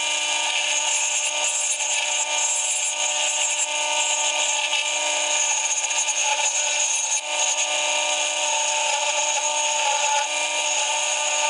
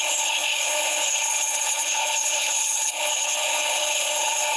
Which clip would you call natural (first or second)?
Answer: first